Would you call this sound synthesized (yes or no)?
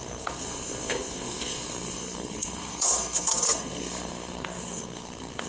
yes